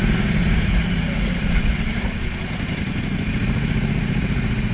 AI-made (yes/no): yes